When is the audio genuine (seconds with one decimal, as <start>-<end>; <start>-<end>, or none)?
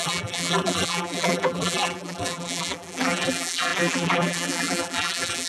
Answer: none